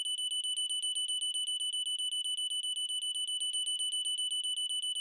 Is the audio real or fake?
real